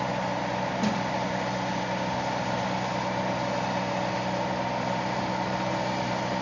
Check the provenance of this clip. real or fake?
real